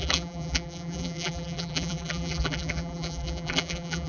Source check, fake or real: fake